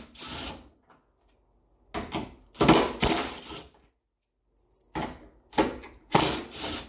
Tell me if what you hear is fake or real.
real